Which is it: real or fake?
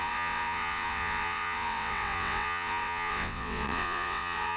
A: fake